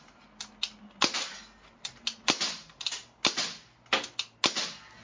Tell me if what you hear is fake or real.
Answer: real